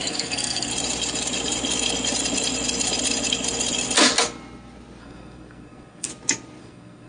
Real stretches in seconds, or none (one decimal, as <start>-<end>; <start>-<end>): 0.7-5.0; 6.1-6.6